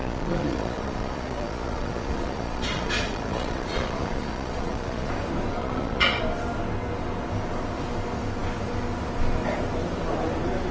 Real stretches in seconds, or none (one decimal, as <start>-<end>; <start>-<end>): 5.1-5.6; 6.2-10.7

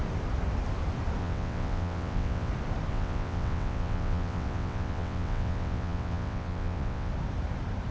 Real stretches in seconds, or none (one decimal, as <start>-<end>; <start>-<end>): 0.0-1.2; 2.5-2.9; 7.1-7.9

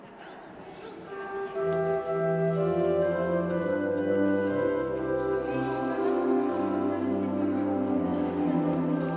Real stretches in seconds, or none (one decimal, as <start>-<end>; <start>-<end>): 0.0-9.2

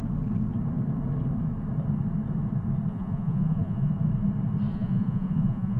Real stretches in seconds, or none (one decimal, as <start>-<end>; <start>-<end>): 0.0-2.9; 3.9-4.7

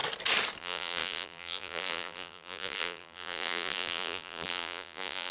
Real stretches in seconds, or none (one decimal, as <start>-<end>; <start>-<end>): 0.0-0.6